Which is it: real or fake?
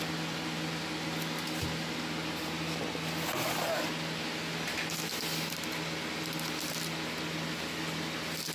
real